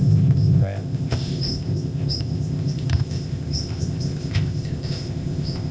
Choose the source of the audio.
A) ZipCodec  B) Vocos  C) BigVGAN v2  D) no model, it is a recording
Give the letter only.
A